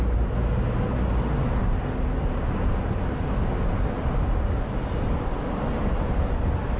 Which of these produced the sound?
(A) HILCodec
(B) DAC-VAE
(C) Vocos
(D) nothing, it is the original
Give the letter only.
D